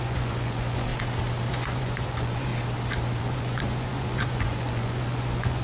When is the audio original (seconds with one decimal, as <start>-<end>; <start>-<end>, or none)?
0.9-1.5; 2.5-3.2